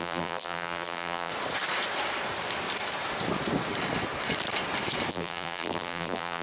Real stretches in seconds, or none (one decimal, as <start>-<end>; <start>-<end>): 1.3-5.1